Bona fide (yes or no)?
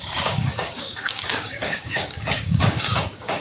no